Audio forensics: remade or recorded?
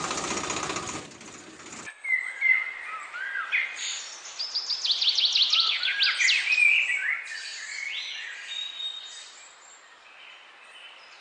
recorded